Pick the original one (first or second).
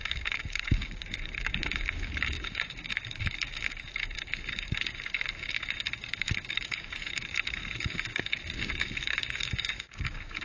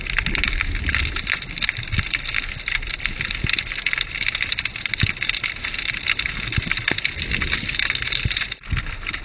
second